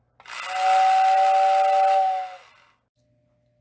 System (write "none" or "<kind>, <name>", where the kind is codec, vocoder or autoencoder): none